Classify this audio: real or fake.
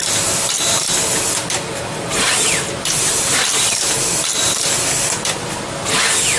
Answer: real